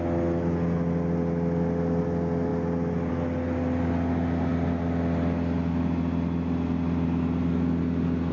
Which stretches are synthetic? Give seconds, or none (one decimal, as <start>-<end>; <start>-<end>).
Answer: none